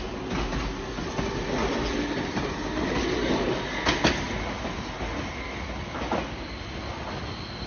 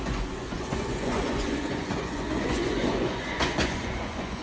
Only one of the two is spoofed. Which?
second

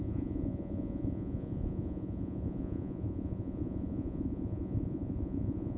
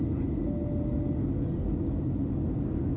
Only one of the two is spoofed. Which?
first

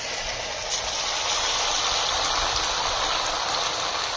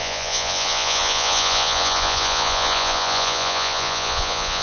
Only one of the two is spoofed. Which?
second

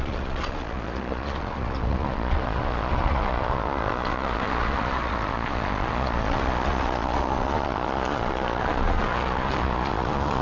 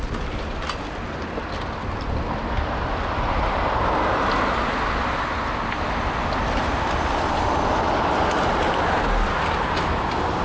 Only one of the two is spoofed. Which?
first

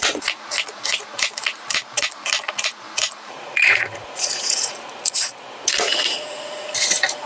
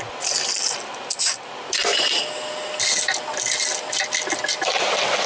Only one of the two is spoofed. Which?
first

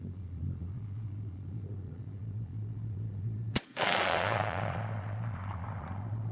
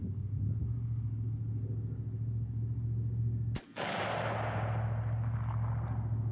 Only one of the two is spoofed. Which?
first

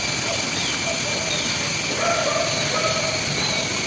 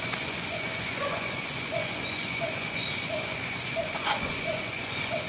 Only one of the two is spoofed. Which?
second